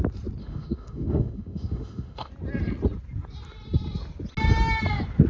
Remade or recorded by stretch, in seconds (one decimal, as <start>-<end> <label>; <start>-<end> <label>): 0.0-0.4 recorded; 0.4-2.3 remade; 2.3-5.3 recorded